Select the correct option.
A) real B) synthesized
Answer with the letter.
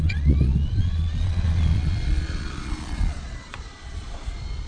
B